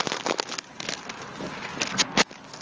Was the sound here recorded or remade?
recorded